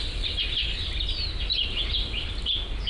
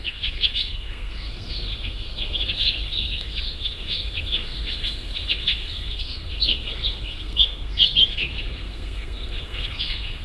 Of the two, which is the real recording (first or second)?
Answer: first